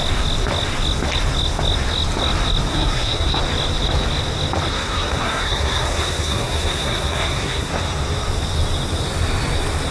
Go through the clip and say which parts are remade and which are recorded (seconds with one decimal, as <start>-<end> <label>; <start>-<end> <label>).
0.0-2.7 recorded; 2.7-3.4 remade; 3.4-4.7 recorded; 4.7-7.7 remade; 7.7-9.9 recorded

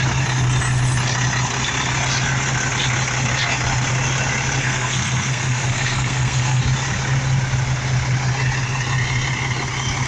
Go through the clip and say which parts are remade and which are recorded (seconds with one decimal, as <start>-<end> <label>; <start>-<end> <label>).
0.0-4.6 recorded; 4.6-6.6 remade; 6.6-10.1 recorded

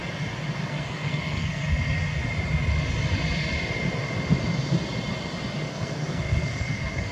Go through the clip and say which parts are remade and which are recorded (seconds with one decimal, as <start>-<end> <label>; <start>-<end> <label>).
0.0-0.6 recorded; 0.6-1.6 remade; 1.6-5.7 recorded; 5.7-7.1 remade

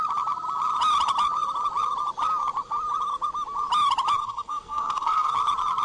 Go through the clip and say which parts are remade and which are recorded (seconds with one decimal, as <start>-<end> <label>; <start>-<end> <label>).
0.0-4.2 recorded; 4.2-5.3 remade; 5.3-5.8 recorded

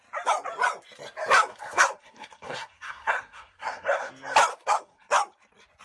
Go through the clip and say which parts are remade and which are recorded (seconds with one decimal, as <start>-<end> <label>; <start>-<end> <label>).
0.0-1.5 recorded; 1.5-4.1 remade; 4.1-4.5 recorded; 4.5-5.1 remade; 5.1-5.8 recorded

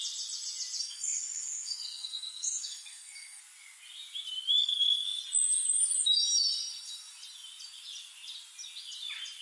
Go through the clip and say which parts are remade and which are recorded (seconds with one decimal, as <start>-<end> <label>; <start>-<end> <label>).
0.0-0.8 recorded; 0.8-3.4 remade; 3.4-4.6 recorded; 4.6-5.2 remade; 5.2-9.4 recorded